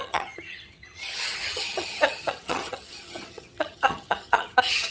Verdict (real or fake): fake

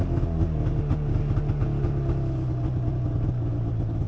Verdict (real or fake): real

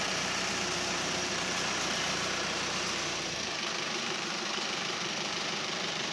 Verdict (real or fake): fake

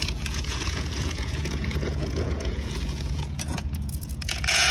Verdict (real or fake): fake